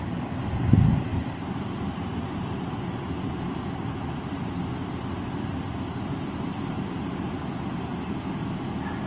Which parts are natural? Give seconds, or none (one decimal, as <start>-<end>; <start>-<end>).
0.0-1.1; 2.5-9.1